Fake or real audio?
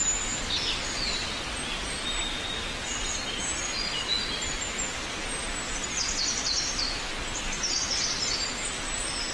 real